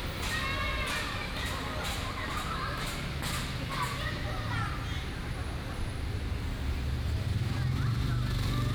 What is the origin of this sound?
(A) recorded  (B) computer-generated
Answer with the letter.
A